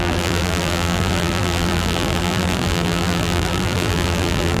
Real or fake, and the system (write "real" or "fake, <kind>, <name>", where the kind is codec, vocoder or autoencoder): fake, vocoder, BigVGAN v2